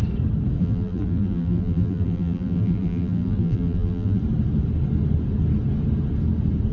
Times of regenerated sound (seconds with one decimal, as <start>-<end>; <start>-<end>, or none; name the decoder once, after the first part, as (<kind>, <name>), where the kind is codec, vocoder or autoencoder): 0.6-4.2 (vocoder, BigVGAN v2)